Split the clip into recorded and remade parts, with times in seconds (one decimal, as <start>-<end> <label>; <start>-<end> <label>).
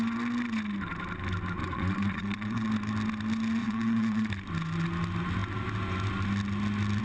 0.0-1.6 recorded; 1.6-2.7 remade; 2.7-3.6 recorded; 3.6-4.3 remade; 4.3-7.0 recorded